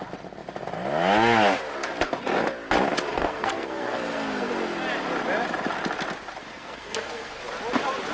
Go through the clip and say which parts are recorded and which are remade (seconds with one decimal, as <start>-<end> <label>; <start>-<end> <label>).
0.0-3.1 recorded; 3.1-4.5 remade; 4.5-6.4 recorded; 6.4-7.4 remade; 7.4-8.1 recorded